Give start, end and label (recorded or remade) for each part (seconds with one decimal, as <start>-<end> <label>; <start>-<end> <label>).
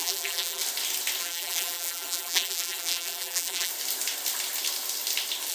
0.0-0.6 remade; 0.6-1.2 recorded; 1.2-3.7 remade; 3.7-5.5 recorded